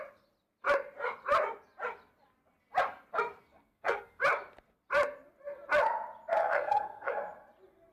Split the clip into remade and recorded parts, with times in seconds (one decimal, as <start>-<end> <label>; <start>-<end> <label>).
0.0-3.4 recorded; 3.4-4.2 remade; 4.2-6.4 recorded; 6.4-7.1 remade; 7.1-7.9 recorded